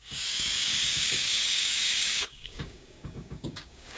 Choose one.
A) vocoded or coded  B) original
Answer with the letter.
A